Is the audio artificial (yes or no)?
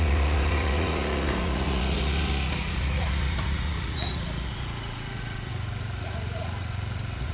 yes